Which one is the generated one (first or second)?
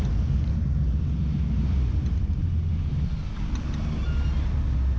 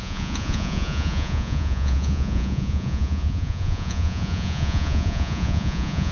second